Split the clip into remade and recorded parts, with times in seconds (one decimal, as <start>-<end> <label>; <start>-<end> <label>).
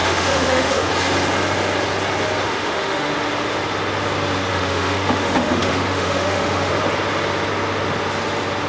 0.0-0.9 remade; 0.9-2.5 recorded; 2.5-3.1 remade; 3.1-4.5 recorded; 4.5-6.7 remade; 6.7-8.7 recorded